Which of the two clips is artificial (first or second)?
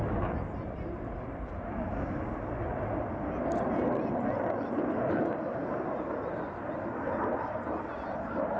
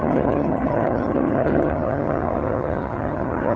second